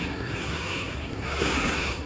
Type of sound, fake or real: fake